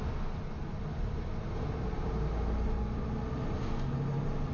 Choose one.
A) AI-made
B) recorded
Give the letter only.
B